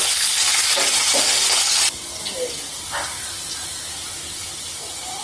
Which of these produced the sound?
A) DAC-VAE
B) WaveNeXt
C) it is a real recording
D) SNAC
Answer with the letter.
C